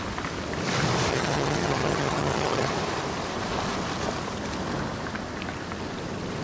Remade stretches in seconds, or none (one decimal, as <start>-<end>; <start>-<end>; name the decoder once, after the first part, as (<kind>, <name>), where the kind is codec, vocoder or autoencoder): 1.1-2.7 (vocoder, HiFi-GAN)